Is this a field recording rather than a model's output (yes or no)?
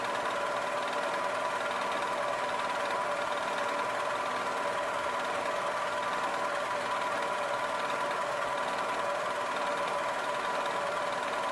yes